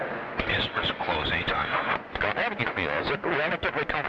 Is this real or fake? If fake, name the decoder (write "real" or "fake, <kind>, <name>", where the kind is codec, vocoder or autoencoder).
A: fake, vocoder, Vocos